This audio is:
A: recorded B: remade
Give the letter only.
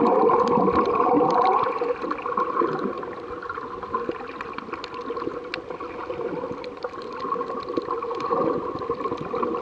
A